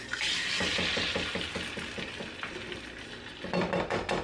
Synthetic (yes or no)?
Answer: no